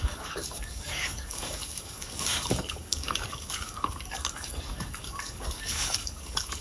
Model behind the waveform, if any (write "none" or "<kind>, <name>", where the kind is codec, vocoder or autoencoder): codec, DAC